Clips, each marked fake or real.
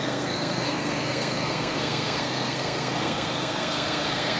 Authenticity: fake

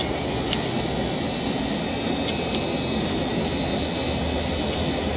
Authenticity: real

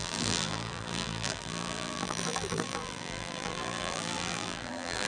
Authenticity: fake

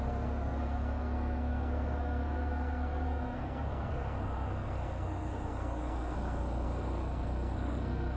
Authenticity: fake